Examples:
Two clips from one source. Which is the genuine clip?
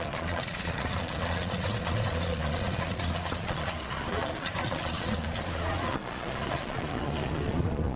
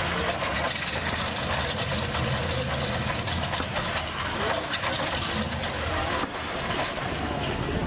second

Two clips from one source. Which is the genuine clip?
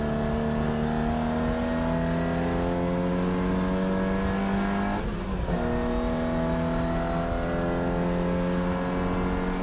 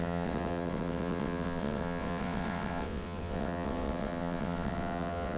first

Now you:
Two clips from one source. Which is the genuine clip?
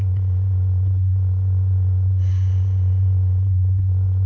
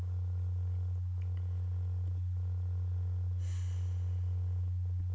second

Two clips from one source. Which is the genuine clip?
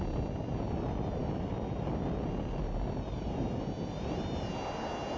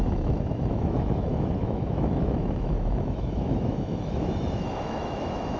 first